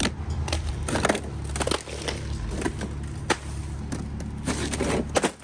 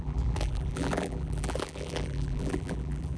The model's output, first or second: second